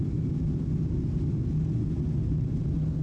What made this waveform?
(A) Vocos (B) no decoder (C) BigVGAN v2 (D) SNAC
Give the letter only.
B